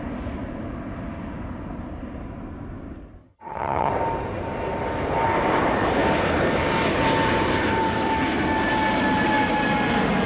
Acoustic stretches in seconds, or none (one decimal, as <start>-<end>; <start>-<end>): 0.0-3.2; 3.9-10.3